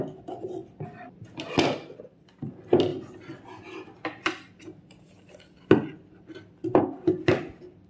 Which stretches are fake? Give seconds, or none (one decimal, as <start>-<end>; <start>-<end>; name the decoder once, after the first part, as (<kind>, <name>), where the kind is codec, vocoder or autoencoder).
none